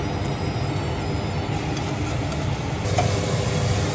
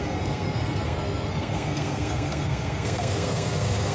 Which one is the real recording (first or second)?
first